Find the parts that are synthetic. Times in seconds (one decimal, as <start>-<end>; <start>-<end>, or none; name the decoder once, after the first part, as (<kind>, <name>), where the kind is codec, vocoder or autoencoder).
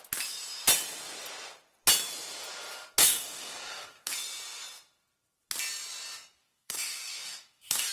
3.0-4.1 (codec, DAC); 6.4-7.9